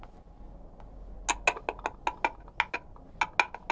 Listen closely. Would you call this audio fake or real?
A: real